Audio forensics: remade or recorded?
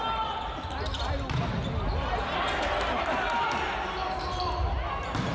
recorded